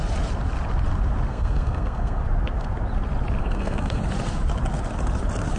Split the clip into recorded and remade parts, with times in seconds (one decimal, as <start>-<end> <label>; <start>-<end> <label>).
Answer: 0.0-1.3 recorded; 1.3-2.2 remade; 2.2-3.4 recorded; 3.4-4.0 remade; 4.0-5.6 recorded